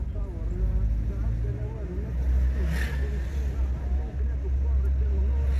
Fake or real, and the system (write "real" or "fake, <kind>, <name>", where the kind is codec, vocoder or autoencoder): real